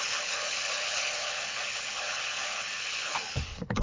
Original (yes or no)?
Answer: no